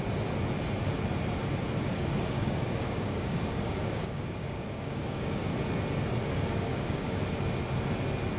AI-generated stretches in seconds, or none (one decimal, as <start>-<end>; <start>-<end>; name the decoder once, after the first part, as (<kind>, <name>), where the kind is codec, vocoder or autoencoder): 1.9-5.4 (codec, DAC); 6.7-7.2